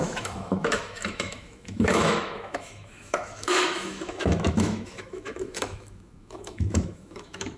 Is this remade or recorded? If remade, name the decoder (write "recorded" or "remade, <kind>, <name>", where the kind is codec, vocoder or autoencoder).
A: remade, autoencoder, DAC-VAE